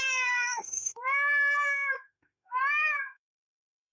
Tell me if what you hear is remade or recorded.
remade